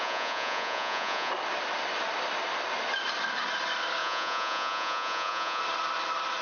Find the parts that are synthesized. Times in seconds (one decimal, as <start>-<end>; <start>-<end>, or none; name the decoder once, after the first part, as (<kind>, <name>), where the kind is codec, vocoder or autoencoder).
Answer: 0.0-1.3 (vocoder, Vocos); 4.0-5.6